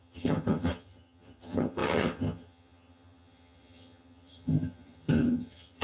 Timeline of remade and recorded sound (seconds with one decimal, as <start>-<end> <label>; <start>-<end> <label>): 0.0-5.8 remade